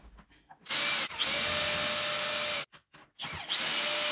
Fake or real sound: real